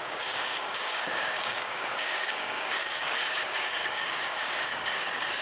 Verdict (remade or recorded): remade